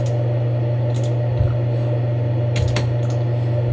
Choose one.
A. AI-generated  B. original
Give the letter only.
B